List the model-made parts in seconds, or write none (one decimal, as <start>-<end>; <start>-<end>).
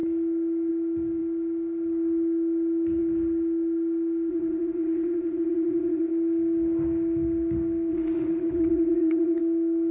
4.3-6.1; 7.9-9.4